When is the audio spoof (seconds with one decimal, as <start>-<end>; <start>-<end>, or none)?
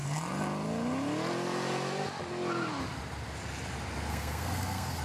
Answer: 4.1-5.0